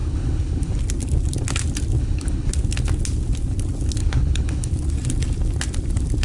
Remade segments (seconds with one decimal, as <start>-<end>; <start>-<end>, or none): 0.0-0.8; 2.0-2.5; 4.0-4.7